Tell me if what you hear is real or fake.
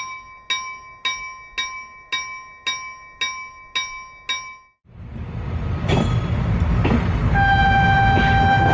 real